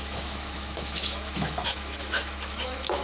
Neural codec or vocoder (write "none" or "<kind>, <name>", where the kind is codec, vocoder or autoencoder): autoencoder, DAC-VAE